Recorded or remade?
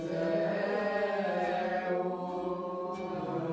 recorded